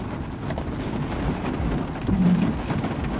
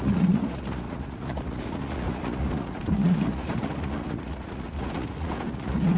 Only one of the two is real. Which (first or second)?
first